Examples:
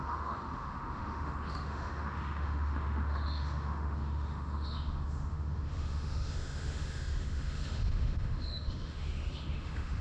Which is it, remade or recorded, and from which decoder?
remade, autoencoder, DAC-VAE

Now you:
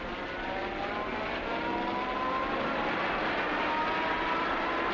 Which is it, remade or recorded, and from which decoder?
recorded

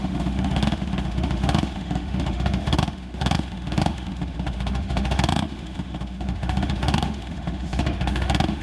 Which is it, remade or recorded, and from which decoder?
remade, autoencoder, DAC-VAE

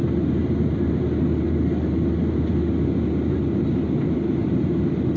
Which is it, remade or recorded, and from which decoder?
recorded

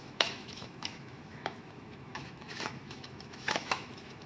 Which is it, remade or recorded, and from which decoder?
remade, autoencoder, DAC-VAE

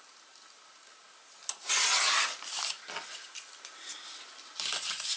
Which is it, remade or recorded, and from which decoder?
recorded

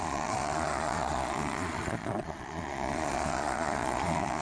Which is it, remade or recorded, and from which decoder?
remade, vocoder, Vocos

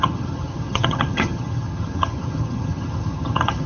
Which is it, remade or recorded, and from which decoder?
remade, vocoder, HiFi-GAN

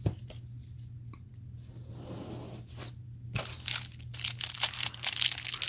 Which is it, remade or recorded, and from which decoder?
recorded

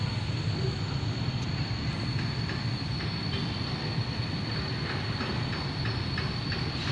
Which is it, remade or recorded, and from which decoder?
recorded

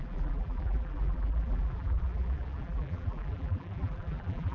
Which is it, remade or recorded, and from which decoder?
remade, vocoder, BigVGAN v2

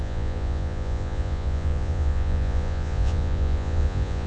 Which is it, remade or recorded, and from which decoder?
remade, vocoder, Vocos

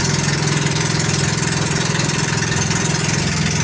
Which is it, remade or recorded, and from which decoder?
remade, vocoder, BigVGAN v2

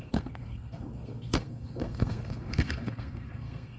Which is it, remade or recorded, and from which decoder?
remade, codec, SNAC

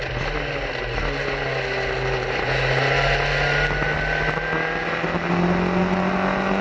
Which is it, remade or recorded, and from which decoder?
recorded